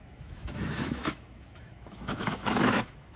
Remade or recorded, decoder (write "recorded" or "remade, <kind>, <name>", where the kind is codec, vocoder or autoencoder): remade, autoencoder, DAC-VAE